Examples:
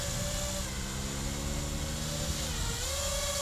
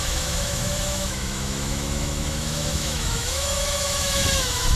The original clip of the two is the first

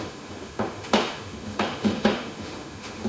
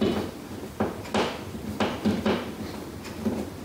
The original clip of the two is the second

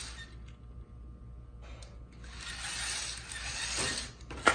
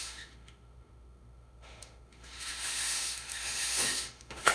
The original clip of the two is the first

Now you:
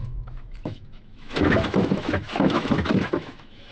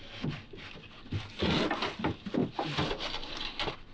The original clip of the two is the second